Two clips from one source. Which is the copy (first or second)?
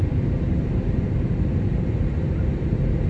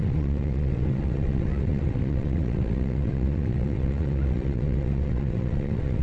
second